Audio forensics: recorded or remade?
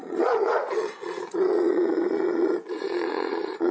remade